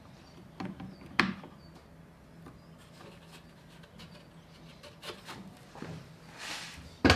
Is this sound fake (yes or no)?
no